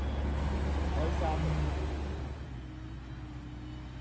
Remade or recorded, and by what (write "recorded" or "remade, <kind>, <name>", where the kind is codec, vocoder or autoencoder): recorded